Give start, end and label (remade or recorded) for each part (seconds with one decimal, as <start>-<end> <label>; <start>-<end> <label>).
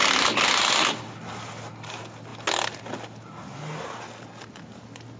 0.0-5.2 recorded